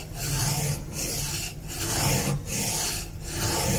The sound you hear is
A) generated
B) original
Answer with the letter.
B